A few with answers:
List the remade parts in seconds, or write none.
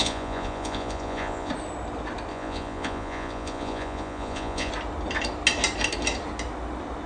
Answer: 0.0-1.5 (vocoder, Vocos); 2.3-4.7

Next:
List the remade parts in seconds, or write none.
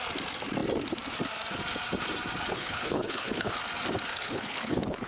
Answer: 2.5-3.6 (codec, HILCodec); 4.1-5.1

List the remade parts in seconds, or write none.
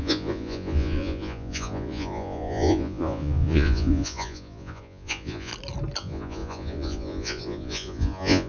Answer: 0.0-5.5 (vocoder, Vocos); 6.0-8.5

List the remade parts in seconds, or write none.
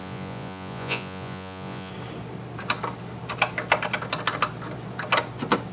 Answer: 0.0-1.9 (vocoder, Vocos)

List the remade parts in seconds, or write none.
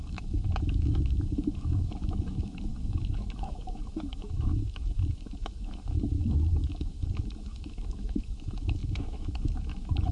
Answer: 0.0-10.1 (autoencoder, DAC-VAE)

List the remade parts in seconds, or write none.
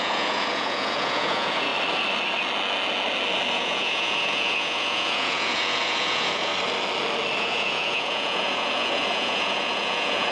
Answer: 0.0-1.7 (vocoder, Vocos); 3.5-6.5; 7.4-10.3